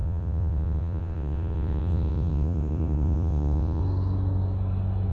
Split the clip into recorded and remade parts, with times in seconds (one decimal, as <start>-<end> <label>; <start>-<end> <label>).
0.0-3.8 remade; 3.8-5.1 recorded